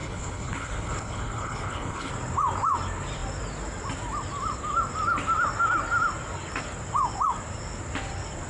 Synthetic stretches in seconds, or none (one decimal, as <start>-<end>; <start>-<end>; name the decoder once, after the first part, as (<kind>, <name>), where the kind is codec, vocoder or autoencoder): 0.0-2.1 (codec, HILCodec)